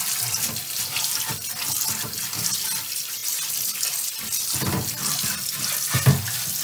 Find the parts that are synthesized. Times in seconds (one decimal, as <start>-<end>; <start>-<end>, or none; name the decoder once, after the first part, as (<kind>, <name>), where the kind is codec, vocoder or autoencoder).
none